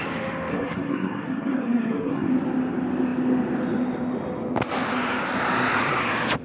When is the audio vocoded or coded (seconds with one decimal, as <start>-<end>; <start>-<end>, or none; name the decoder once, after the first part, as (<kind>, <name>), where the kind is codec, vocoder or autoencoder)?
0.5-2.3 (codec, SNAC)